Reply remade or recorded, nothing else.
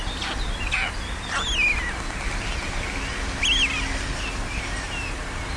recorded